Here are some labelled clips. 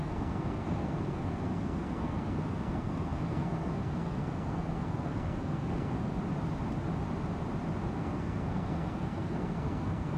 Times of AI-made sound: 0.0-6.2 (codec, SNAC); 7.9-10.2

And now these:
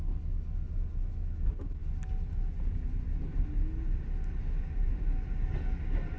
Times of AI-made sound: none

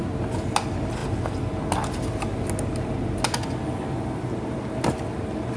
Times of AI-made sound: none

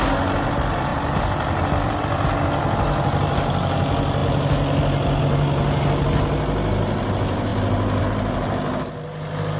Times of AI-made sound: 0.9-2.0 (vocoder, BigVGAN v2)